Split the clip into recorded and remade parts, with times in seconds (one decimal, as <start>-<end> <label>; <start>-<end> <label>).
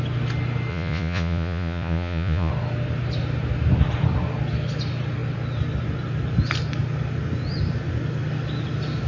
0.0-0.7 recorded; 0.7-2.5 remade; 2.5-9.1 recorded